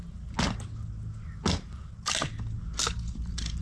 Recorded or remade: recorded